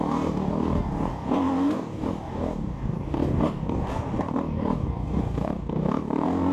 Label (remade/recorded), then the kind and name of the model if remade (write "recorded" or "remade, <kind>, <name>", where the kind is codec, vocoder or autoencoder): remade, codec, DAC